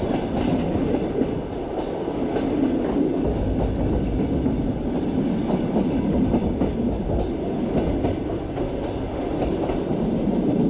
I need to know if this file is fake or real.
real